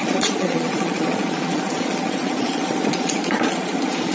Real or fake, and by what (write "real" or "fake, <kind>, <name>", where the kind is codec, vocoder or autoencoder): fake, vocoder, Vocos